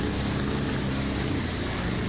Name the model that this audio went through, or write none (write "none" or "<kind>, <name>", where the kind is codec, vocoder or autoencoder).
none